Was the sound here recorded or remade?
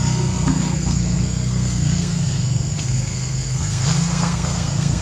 remade